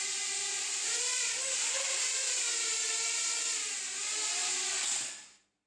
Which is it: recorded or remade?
recorded